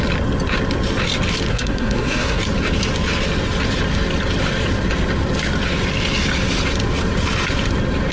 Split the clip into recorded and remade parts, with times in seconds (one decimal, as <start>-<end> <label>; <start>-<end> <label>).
0.0-1.5 recorded; 1.5-2.4 remade; 2.4-8.1 recorded